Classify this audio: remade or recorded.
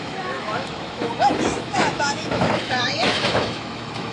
remade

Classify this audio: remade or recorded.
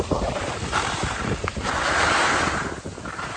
recorded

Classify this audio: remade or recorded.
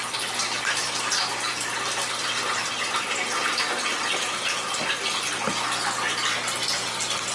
recorded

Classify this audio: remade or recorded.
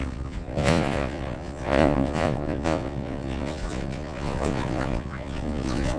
remade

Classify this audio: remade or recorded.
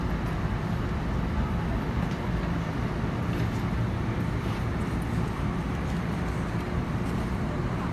recorded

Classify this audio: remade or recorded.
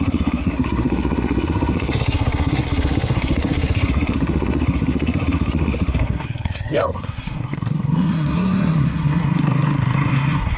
remade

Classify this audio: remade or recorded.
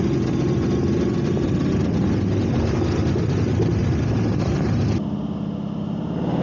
recorded